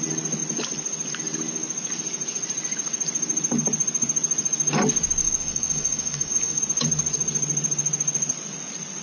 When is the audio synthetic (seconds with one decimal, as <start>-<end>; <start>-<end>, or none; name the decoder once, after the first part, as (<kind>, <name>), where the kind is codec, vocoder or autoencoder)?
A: 5.2-6.6 (codec, DAC)